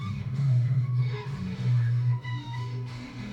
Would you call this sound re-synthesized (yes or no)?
yes